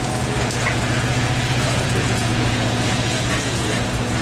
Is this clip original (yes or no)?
no